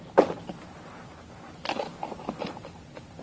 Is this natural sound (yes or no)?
yes